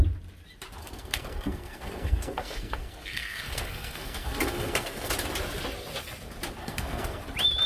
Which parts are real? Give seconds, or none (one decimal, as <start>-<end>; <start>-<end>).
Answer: 0.0-0.8; 5.1-6.6; 7.2-7.7